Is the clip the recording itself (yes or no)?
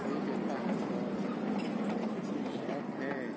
yes